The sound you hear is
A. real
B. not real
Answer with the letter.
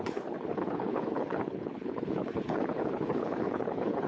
B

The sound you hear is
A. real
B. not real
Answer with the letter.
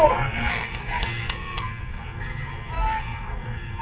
B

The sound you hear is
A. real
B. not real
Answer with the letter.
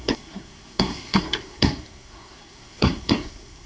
B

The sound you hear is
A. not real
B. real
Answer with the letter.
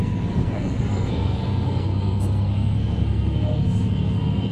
A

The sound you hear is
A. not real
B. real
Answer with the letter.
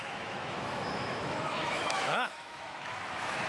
A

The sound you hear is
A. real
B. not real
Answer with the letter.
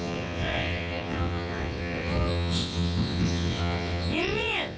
B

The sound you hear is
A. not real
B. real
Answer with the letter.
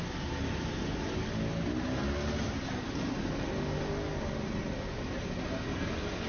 B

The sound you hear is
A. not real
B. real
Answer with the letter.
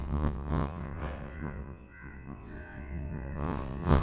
A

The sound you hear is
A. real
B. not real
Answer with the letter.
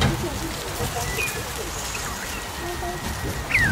A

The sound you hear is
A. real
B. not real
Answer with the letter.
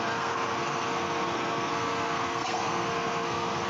B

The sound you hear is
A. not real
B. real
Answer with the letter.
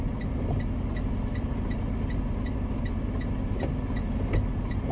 B